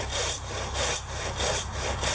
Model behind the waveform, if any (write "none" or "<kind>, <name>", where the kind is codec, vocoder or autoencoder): none